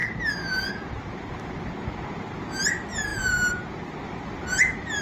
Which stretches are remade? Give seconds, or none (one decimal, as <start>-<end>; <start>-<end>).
none